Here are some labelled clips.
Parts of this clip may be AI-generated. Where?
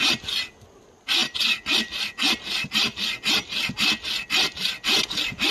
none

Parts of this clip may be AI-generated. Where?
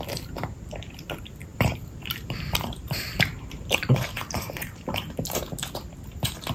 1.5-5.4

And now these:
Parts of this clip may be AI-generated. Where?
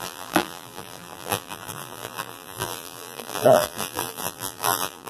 0.0-5.1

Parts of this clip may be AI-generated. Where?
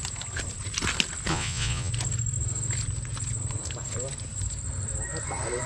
1.3-1.9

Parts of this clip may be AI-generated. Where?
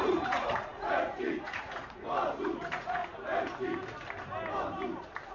0.0-3.0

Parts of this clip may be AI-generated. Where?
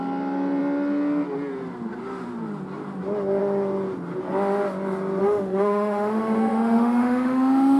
5.2-7.8